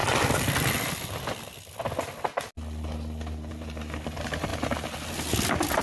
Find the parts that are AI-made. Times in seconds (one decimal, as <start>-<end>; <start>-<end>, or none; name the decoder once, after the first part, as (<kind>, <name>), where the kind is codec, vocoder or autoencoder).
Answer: 3.5-4.5 (vocoder, BigVGAN v2)